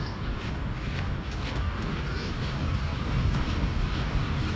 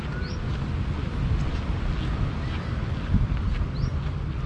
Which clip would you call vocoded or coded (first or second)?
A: first